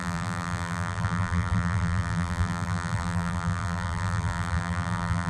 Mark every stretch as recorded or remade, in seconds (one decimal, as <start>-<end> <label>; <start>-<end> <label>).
0.0-5.3 remade